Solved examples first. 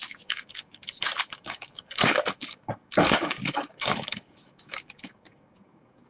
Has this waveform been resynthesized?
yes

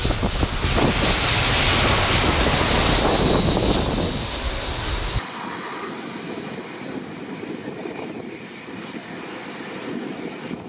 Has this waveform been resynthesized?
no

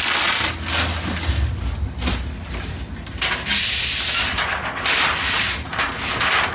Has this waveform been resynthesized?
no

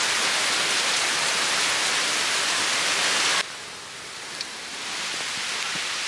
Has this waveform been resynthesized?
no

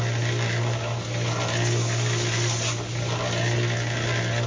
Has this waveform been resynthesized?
no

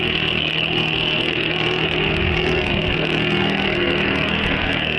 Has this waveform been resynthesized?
yes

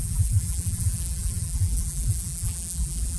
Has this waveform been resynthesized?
yes